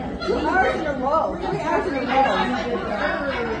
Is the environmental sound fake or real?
real